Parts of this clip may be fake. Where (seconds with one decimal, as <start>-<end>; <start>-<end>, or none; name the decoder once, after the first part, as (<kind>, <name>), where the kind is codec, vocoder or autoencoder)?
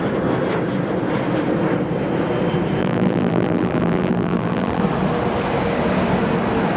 2.8-4.8 (vocoder, BigVGAN v2)